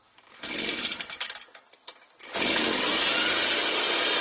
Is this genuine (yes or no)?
yes